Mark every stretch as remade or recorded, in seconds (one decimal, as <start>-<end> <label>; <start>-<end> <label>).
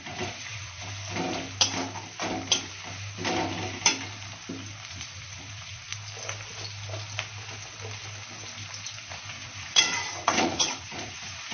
0.0-0.8 remade; 0.8-4.9 recorded; 4.9-5.9 remade; 5.9-9.1 recorded; 9.1-11.5 remade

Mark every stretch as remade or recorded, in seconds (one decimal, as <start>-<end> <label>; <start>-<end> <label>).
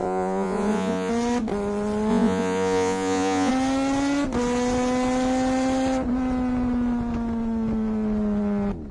0.0-1.1 remade; 1.1-2.1 recorded; 2.1-3.5 remade; 3.5-8.9 recorded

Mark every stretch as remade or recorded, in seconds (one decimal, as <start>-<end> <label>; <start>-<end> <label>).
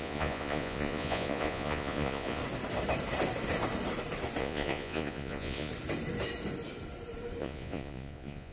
0.0-2.4 remade; 2.4-4.4 recorded; 4.4-5.7 remade; 5.7-7.4 recorded; 7.4-8.5 remade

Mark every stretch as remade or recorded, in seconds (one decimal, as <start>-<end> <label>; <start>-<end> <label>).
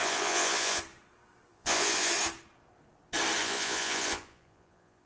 0.0-0.8 remade; 0.8-1.5 recorded; 1.5-2.1 remade; 2.1-3.4 recorded; 3.4-5.1 remade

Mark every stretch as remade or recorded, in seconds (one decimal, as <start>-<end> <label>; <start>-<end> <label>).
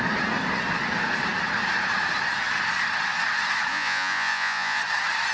0.0-3.7 recorded; 3.7-4.8 remade; 4.8-5.3 recorded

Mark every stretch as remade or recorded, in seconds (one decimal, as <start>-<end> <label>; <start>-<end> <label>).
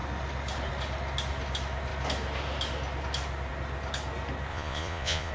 0.0-4.5 recorded; 4.5-5.3 remade